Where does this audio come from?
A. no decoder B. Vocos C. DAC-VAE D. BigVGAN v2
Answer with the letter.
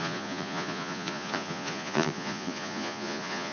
B